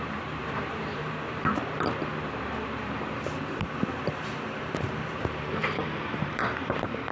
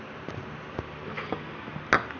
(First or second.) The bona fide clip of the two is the second